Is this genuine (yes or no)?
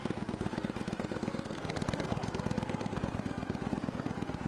no